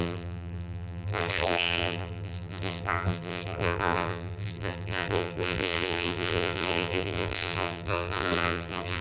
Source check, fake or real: fake